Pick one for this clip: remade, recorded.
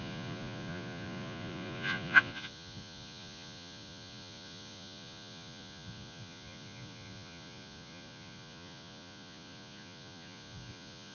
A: remade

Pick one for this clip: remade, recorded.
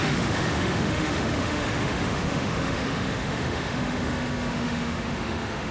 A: remade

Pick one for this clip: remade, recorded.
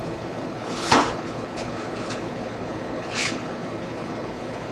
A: remade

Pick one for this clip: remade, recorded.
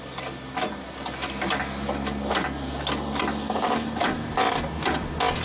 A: recorded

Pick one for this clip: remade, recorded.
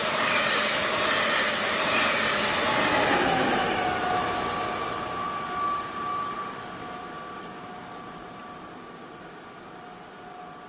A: recorded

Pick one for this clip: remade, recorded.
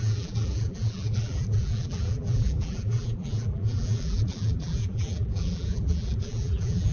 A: remade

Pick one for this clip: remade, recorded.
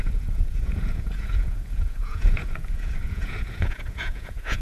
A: remade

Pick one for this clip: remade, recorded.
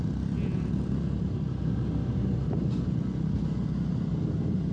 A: recorded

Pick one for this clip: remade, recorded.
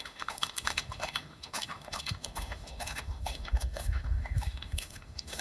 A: remade